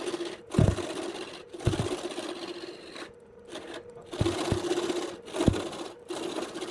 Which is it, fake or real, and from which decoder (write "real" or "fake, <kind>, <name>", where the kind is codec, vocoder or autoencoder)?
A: real